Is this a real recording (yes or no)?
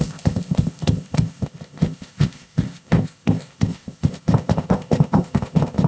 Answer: no